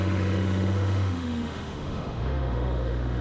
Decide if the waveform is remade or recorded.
remade